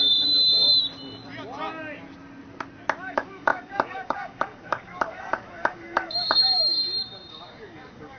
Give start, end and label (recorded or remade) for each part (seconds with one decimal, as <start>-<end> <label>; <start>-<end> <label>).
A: 0.0-0.7 remade; 0.7-3.0 recorded; 3.0-6.8 remade; 6.8-7.3 recorded; 7.3-8.2 remade

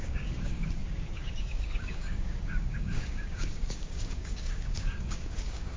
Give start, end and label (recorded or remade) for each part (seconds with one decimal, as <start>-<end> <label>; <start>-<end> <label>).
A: 0.0-5.8 remade

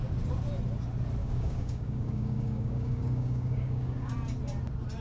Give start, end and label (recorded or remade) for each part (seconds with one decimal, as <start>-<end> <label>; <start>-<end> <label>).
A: 0.0-1.2 recorded; 1.2-4.1 remade; 4.1-5.0 recorded

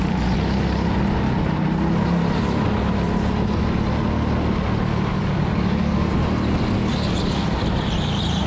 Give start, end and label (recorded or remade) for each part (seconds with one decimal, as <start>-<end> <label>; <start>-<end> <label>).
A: 0.0-5.1 recorded; 5.1-6.1 remade; 6.1-8.5 recorded

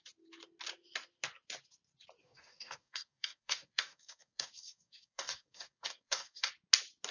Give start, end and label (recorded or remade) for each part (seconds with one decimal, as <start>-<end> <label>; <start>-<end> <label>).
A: 0.0-2.2 recorded; 2.2-6.5 remade; 6.5-7.1 recorded

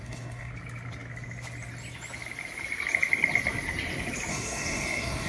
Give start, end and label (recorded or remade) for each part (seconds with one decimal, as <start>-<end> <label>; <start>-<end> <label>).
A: 0.0-0.5 remade; 0.5-4.3 recorded; 4.3-5.3 remade

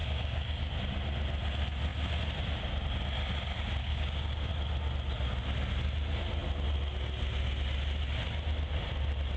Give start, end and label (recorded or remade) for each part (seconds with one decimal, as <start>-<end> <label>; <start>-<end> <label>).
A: 0.0-0.7 remade; 0.7-3.8 recorded; 3.8-4.5 remade; 4.5-9.4 recorded